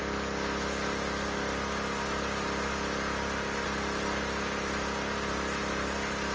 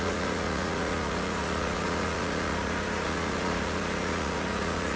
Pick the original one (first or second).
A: first